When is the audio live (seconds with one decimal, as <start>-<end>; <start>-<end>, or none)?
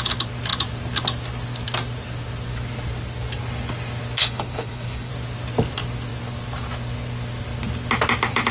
0.0-4.2; 5.1-8.5